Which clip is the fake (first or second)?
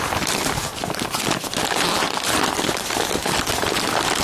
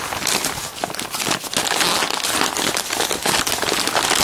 first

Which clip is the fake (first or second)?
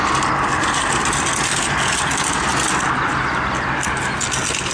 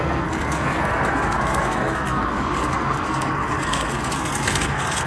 second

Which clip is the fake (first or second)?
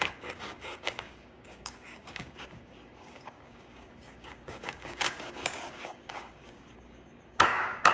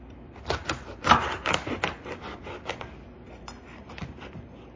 first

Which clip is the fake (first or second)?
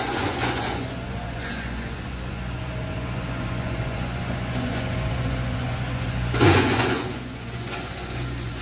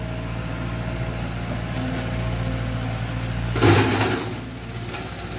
first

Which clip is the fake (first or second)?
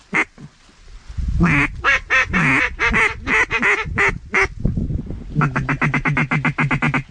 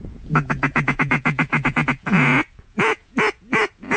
second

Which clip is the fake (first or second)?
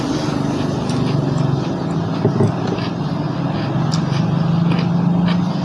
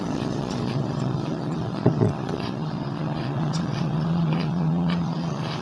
second